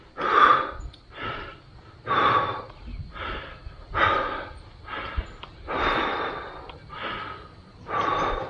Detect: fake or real real